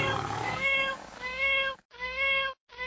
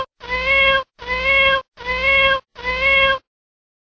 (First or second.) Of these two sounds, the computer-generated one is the first